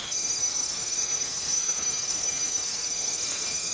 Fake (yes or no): yes